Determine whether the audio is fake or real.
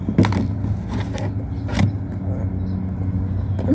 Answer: real